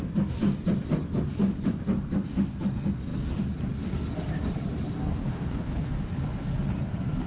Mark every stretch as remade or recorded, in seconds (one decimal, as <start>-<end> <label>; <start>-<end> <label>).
0.0-5.2 recorded; 5.2-5.9 remade; 5.9-7.3 recorded